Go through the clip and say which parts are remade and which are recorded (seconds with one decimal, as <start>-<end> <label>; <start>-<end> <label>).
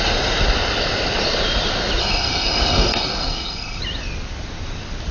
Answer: 0.0-2.0 recorded; 2.0-3.8 remade; 3.8-5.1 recorded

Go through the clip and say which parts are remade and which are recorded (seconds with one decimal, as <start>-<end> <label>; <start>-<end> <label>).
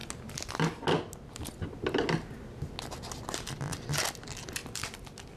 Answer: 0.0-3.2 recorded; 3.2-5.4 remade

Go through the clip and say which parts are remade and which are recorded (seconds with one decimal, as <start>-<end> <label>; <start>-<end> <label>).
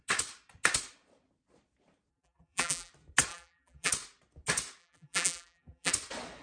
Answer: 0.0-2.1 recorded; 2.1-2.9 remade; 2.9-3.3 recorded; 3.3-3.9 remade; 3.9-4.8 recorded; 4.8-5.9 remade; 5.9-6.4 recorded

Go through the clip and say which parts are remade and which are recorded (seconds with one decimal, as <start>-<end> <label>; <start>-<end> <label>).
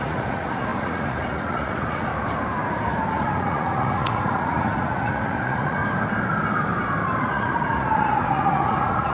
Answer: 0.0-2.1 remade; 2.1-3.1 recorded; 3.1-5.8 remade; 5.8-7.2 recorded; 7.2-9.1 remade